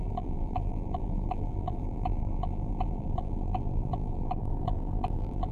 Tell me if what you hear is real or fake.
fake